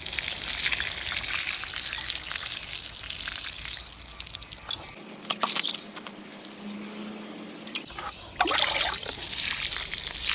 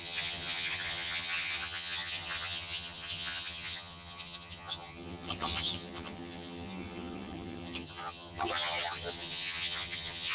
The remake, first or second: second